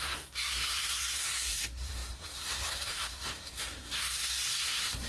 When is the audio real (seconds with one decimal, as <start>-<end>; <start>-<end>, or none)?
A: none